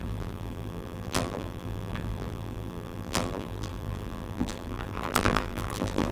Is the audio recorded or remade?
remade